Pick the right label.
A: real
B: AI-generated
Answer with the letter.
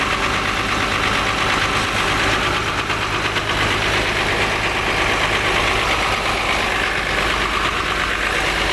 A